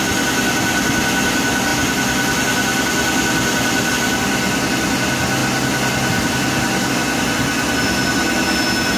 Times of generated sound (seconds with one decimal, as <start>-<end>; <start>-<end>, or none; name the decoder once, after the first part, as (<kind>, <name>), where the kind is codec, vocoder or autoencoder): none